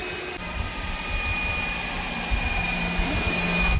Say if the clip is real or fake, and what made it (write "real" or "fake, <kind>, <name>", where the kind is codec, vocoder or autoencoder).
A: real